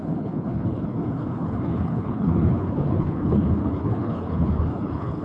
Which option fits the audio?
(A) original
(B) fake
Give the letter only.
B